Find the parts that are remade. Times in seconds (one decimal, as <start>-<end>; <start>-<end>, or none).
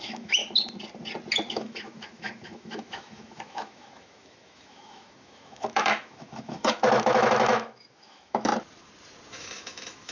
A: 0.0-0.4; 1.5-8.5; 9.3-10.1